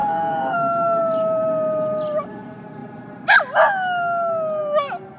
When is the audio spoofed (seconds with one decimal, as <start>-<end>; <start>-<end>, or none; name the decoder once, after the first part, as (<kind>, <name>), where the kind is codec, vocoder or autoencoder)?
0.0-1.0 (codec, DAC)